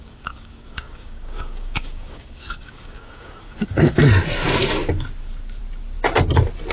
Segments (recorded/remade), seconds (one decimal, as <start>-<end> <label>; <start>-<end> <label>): 0.0-4.0 remade; 4.0-6.7 recorded